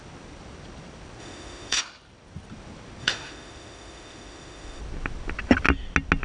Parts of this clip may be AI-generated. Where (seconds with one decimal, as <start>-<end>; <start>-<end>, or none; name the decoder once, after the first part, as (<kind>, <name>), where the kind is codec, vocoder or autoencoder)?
1.2-1.8 (autoencoder, DAC-VAE); 3.0-4.8